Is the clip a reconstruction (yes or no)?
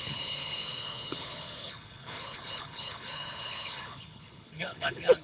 yes